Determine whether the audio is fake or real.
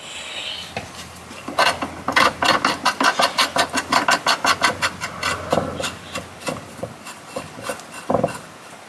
real